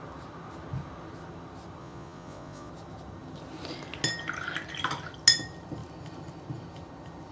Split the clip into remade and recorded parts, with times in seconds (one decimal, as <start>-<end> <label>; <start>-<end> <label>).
0.0-1.8 recorded; 1.8-2.7 remade; 2.7-7.3 recorded